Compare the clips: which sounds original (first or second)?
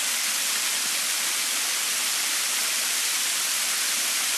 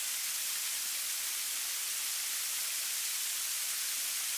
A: second